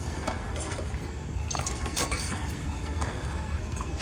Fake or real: fake